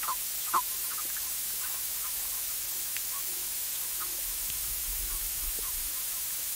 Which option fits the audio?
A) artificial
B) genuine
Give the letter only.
A